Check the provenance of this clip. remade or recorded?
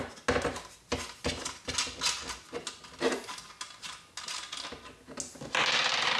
recorded